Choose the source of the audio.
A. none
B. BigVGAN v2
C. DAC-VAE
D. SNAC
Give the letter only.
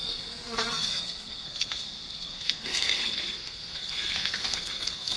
D